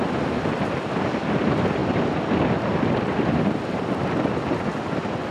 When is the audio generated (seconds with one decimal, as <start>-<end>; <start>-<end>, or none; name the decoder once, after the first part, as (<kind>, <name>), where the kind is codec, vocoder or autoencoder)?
none